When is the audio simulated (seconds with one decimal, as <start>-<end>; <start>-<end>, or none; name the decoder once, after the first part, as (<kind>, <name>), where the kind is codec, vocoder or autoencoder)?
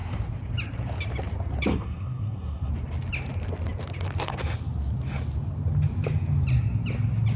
1.7-2.7 (codec, SNAC)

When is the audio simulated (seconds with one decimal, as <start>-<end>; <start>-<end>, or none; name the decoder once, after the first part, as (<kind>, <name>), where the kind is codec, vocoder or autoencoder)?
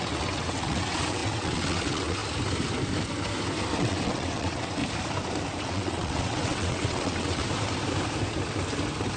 0.0-2.2 (vocoder, WaveNeXt); 3.8-4.8; 5.6-7.4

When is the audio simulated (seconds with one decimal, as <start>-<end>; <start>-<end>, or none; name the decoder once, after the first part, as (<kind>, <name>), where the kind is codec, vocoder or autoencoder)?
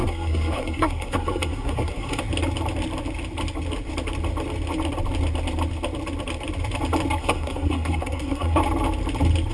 0.0-2.2 (codec, SNAC); 7.2-8.6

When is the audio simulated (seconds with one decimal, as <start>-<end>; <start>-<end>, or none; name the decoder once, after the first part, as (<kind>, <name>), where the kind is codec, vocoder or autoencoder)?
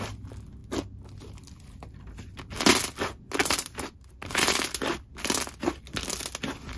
3.4-4.7 (vocoder, BigVGAN v2)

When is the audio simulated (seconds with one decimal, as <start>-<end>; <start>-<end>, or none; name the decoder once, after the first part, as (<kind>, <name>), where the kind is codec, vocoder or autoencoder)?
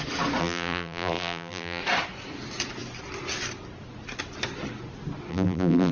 0.4-1.8 (vocoder, BigVGAN v2); 5.3-5.9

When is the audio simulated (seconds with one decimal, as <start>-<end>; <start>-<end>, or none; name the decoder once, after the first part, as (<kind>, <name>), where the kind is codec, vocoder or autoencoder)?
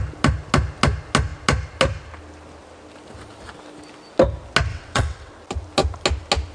4.7-5.3 (vocoder, WaveNeXt)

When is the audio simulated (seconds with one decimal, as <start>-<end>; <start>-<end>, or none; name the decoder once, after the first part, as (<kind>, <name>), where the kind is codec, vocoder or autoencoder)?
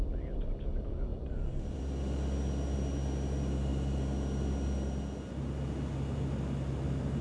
1.1-1.8 (vocoder, BigVGAN v2)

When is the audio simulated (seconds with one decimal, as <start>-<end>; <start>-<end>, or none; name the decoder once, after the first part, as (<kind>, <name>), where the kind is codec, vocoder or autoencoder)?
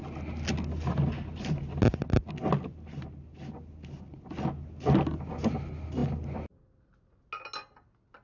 none